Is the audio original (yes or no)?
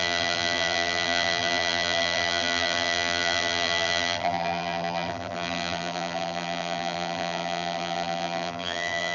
no